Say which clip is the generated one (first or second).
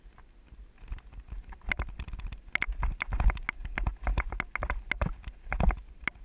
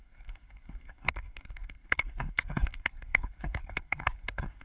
second